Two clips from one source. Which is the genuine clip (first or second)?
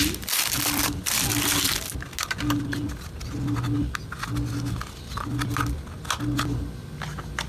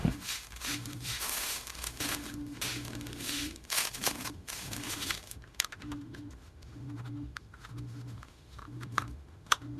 first